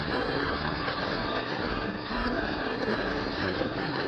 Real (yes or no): no